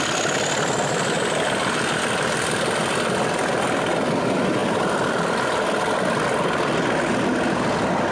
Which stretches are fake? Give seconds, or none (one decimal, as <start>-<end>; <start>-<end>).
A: none